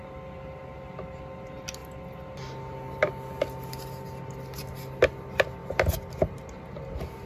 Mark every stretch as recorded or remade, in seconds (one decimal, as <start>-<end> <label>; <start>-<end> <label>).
0.0-7.3 recorded